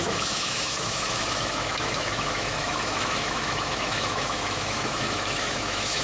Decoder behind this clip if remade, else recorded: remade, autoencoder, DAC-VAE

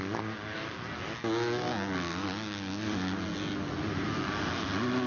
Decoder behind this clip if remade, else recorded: recorded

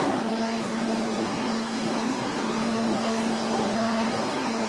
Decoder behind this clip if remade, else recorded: remade, codec, SNAC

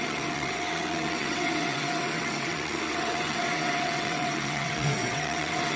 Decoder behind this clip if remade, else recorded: remade, vocoder, WaveNeXt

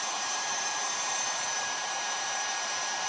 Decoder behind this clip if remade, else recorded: remade, vocoder, BigVGAN v2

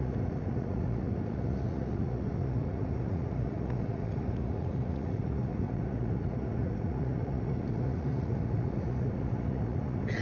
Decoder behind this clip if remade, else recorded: remade, vocoder, Vocos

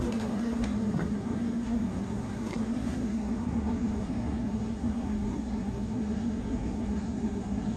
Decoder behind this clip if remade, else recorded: remade, codec, SNAC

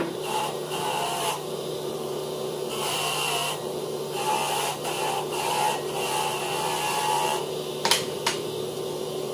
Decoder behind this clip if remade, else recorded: remade, vocoder, BigVGAN v2